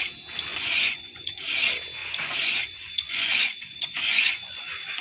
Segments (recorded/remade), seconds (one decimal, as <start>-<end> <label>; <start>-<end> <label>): 0.0-0.5 recorded; 0.5-1.4 remade; 1.4-2.0 recorded; 2.0-5.0 remade